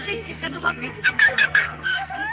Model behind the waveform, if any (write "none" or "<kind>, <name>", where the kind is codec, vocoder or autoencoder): codec, SNAC